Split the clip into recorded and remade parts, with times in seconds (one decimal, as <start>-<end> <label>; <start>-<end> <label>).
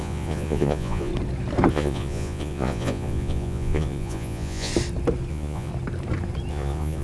0.0-1.1 remade; 1.1-1.7 recorded; 1.7-4.7 remade; 4.7-5.3 recorded; 5.3-5.7 remade; 5.7-6.5 recorded; 6.5-7.0 remade